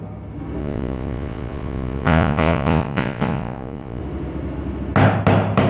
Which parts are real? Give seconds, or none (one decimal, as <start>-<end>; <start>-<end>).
0.0-0.6; 4.0-5.7